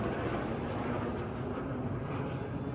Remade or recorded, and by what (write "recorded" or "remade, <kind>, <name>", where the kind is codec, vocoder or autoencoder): recorded